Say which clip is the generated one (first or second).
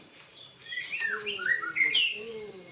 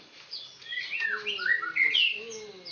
first